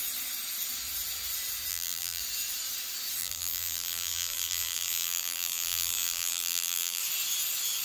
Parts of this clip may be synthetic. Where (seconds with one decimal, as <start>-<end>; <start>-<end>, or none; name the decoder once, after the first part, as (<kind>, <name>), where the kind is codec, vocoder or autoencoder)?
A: 1.7-2.2 (vocoder, BigVGAN v2); 3.2-7.0